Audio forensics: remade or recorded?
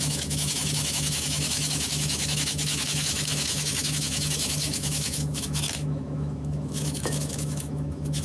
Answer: remade